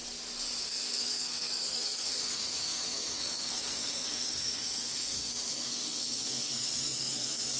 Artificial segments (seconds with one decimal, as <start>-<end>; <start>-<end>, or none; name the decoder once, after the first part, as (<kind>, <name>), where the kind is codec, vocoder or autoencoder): 0.6-7.6 (codec, SNAC)